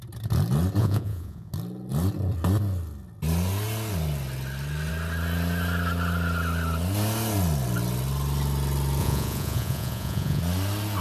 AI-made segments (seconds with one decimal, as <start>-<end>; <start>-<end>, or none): 0.8-1.5; 9.0-10.4